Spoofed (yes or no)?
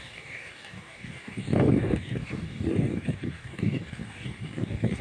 yes